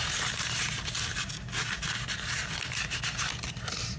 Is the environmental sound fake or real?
real